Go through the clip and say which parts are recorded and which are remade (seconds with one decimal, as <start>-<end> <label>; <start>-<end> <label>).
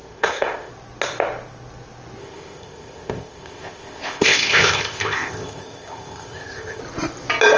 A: 0.0-0.7 remade; 0.7-2.2 recorded; 2.2-6.8 remade; 6.8-7.6 recorded